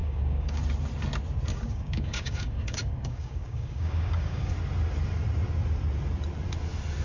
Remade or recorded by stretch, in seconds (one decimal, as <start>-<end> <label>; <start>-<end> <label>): 0.0-0.6 remade; 0.6-1.5 recorded; 1.5-4.5 remade; 4.5-7.0 recorded